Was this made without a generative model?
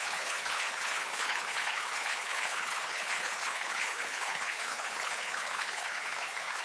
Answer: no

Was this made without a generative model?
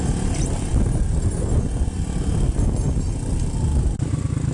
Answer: yes